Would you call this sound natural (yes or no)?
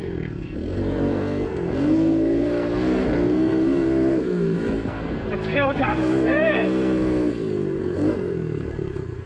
no